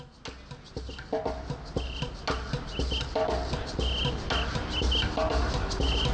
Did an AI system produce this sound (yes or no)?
no